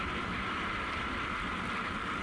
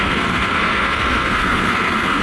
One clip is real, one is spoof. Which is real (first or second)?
first